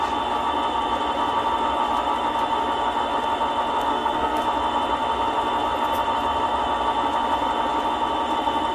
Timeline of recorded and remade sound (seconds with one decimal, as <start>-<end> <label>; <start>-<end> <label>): 0.0-3.9 recorded; 3.9-4.4 remade; 4.4-8.7 recorded